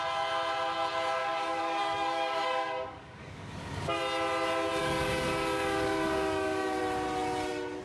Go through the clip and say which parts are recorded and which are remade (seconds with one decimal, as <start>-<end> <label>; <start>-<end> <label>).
0.0-1.2 recorded; 1.2-4.0 remade; 4.0-4.8 recorded; 4.8-6.8 remade; 6.8-7.8 recorded